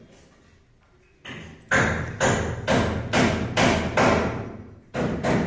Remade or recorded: recorded